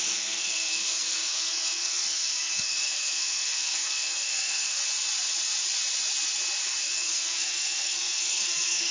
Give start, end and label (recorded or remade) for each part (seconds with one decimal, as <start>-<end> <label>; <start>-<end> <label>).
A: 0.0-4.8 remade; 4.8-6.8 recorded; 6.8-8.9 remade